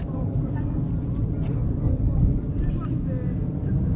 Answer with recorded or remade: recorded